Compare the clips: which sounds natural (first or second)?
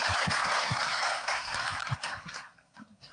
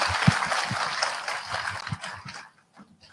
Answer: second